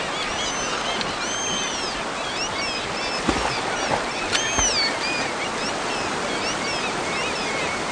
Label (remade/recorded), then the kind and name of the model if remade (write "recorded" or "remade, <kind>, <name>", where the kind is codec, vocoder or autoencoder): recorded